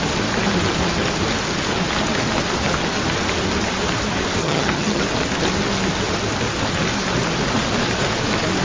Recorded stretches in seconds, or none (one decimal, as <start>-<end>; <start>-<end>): 0.0-4.4; 5.0-8.6